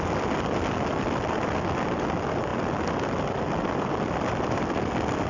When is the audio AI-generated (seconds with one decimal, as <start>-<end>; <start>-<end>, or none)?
none